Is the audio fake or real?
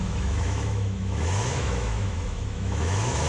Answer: fake